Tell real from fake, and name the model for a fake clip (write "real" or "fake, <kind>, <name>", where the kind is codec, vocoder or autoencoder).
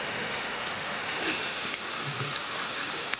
fake, autoencoder, DAC-VAE